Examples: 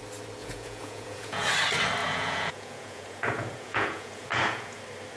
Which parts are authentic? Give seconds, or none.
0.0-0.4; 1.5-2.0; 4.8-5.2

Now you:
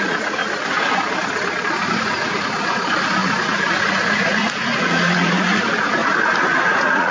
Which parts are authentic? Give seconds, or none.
0.4-1.9; 6.0-6.6

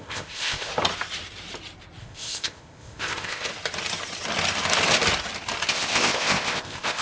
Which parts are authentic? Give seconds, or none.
0.7-2.0; 3.5-5.7

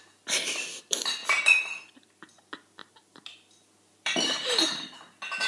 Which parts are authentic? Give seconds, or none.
0.0-1.2; 1.9-2.8; 4.9-5.5